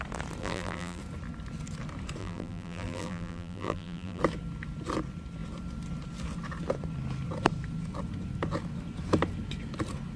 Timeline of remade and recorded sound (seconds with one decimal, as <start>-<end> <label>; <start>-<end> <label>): 0.0-0.4 recorded; 0.4-1.0 remade; 1.0-2.2 recorded; 2.2-4.2 remade; 4.2-10.2 recorded